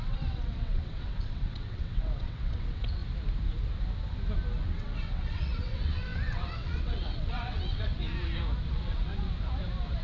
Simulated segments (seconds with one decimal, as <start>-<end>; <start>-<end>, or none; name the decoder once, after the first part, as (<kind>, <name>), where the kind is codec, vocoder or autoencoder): 0.0-3.0 (vocoder, WaveNeXt); 4.6-8.0; 8.7-9.1

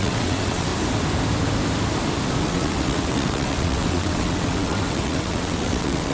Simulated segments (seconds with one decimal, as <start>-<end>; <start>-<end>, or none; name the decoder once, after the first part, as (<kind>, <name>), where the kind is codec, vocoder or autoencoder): 0.0-0.7 (vocoder, WaveNeXt); 2.4-6.1

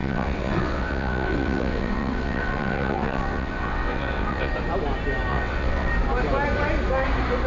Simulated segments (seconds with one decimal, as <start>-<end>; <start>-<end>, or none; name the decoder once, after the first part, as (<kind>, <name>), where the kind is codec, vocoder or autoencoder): 0.0-4.5 (vocoder, WaveNeXt); 5.3-5.9

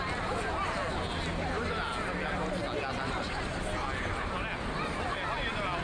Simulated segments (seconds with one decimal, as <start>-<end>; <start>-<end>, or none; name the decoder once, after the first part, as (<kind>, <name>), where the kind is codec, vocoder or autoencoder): none

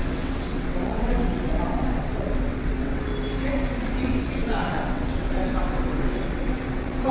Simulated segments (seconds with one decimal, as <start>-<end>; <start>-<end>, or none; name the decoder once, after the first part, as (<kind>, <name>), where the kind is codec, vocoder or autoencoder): 0.0-3.1 (vocoder, WaveNeXt); 4.0-7.1